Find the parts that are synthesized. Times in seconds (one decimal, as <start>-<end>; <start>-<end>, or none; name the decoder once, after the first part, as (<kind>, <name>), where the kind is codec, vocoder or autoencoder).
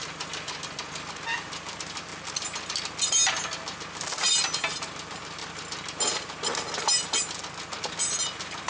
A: none